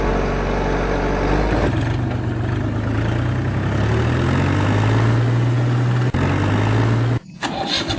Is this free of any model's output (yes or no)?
yes